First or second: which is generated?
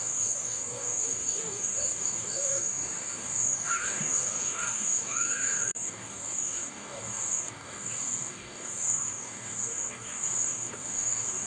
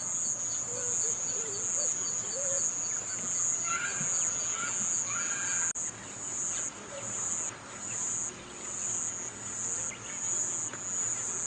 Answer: first